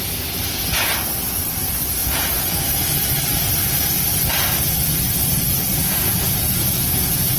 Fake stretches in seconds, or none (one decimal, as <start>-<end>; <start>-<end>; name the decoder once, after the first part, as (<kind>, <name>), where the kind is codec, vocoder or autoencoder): 2.0-2.9 (vocoder, Vocos); 5.8-7.4